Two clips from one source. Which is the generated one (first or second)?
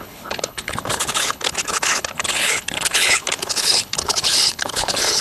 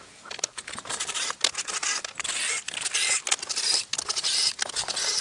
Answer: first